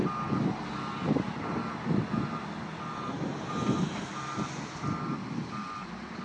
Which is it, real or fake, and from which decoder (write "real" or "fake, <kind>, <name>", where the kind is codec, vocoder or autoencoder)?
real